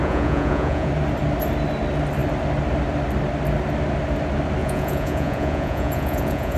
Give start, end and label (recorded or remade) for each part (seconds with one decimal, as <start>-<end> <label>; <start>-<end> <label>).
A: 0.0-0.9 remade; 0.9-4.6 recorded; 4.6-6.6 remade